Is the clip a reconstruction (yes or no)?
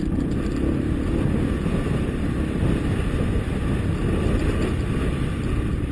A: no